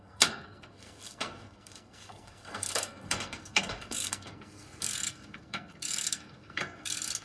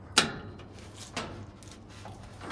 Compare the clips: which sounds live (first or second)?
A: second